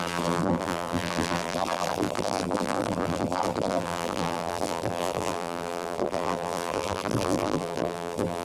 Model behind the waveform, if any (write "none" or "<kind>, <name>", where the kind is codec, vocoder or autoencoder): vocoder, BigVGAN v2